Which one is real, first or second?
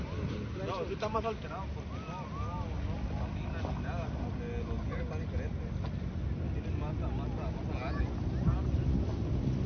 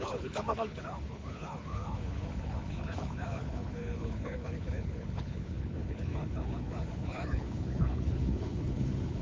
first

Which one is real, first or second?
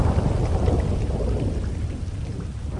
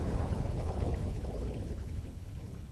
first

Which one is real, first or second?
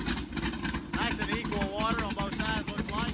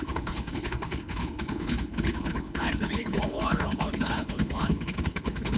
first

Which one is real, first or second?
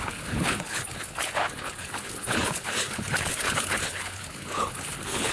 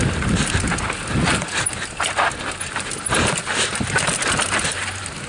second